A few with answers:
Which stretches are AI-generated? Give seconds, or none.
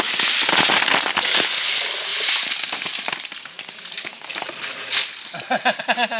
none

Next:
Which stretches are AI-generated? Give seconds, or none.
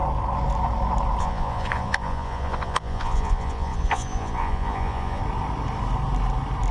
1.2-5.2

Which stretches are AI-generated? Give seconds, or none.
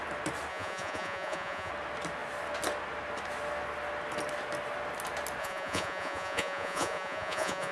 0.5-1.7; 5.4-7.7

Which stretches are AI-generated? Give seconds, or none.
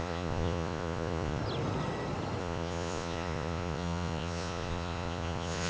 0.0-1.4; 2.4-5.7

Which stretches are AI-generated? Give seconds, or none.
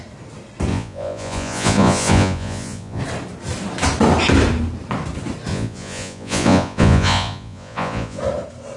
0.7-3.0; 5.5-8.2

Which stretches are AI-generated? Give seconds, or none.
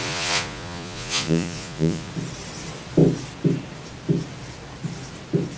0.0-2.1